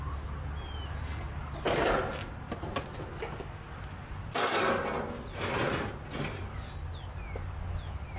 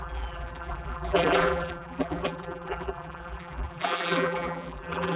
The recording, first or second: first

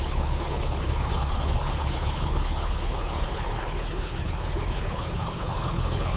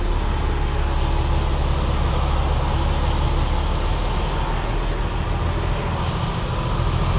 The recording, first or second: second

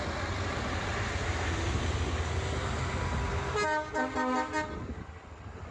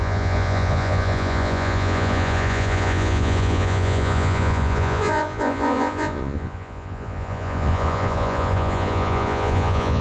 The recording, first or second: first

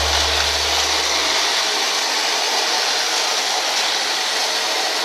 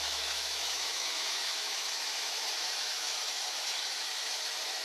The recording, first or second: first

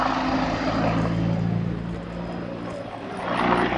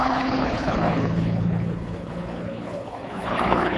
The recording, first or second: first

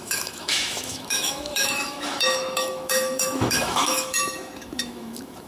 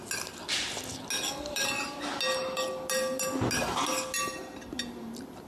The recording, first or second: second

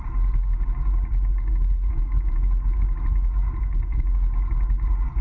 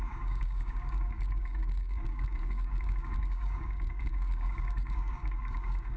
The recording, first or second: first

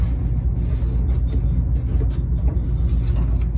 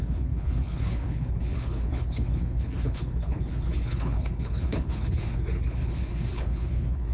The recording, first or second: first